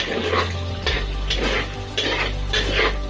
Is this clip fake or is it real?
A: real